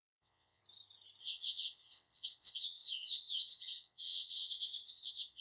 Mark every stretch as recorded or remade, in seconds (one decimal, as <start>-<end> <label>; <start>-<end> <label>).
0.0-0.6 remade; 0.6-1.2 recorded; 1.2-5.4 remade